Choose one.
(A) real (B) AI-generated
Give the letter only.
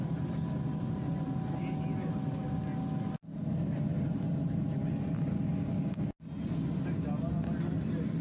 A